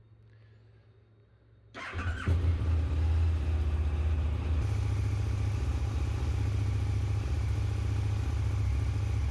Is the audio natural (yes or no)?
yes